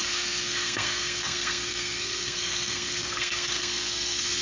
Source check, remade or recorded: remade